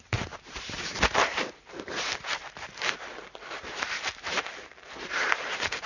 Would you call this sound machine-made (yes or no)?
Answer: yes